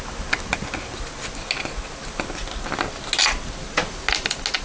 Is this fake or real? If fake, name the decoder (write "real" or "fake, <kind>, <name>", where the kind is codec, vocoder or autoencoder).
real